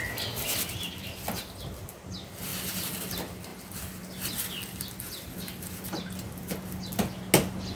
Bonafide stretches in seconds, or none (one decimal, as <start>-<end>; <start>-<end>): 0.0-7.8